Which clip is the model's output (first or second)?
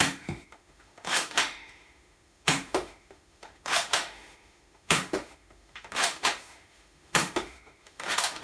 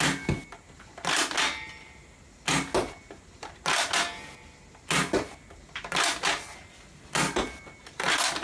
first